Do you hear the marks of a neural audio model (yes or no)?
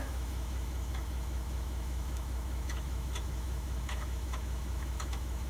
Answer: yes